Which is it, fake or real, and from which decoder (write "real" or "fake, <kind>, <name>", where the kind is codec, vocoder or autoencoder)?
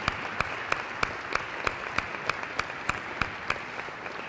real